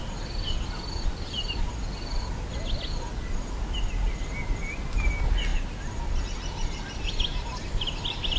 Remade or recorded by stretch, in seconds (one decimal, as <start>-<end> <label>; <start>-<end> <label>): 0.0-8.4 recorded